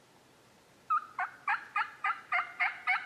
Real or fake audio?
real